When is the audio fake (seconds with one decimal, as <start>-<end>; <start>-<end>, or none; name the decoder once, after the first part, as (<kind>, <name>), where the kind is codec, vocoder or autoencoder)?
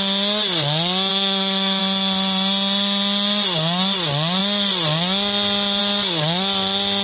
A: 1.1-1.8 (autoencoder, DAC-VAE)